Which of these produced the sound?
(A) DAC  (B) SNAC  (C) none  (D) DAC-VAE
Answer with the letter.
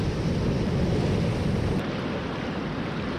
C